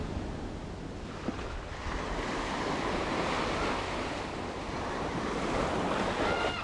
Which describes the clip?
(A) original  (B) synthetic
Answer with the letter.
A